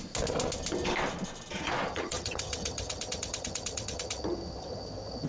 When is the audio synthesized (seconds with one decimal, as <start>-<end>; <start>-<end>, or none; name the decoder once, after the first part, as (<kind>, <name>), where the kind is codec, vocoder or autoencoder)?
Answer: 1.9-5.3 (vocoder, HiFi-GAN)